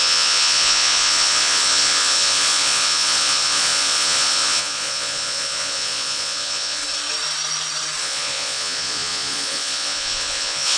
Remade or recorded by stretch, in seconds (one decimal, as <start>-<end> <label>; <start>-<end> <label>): 0.0-6.8 remade; 6.8-8.0 recorded; 8.0-10.8 remade